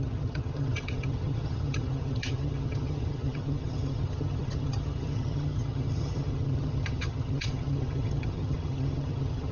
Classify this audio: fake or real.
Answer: fake